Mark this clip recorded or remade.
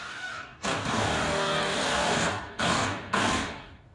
remade